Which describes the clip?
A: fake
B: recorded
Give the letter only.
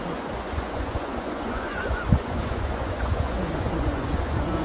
A